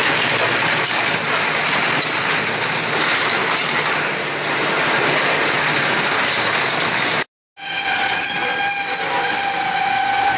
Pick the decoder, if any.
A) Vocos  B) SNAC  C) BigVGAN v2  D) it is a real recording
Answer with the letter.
D